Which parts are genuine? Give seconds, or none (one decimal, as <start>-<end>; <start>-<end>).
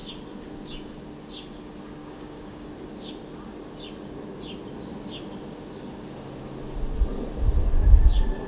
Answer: 0.0-2.0; 2.7-8.5